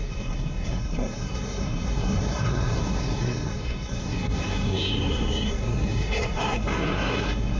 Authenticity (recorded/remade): remade